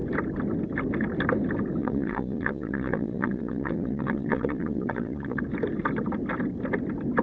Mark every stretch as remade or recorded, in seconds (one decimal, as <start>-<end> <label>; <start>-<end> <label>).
0.0-1.8 recorded; 1.8-5.4 remade; 5.4-7.2 recorded